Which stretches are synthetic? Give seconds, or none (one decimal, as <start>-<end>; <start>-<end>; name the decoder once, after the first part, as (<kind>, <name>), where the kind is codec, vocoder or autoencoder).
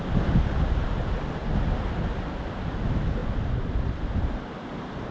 none